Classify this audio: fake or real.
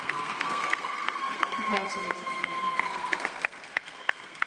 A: fake